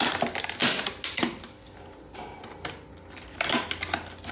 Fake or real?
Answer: real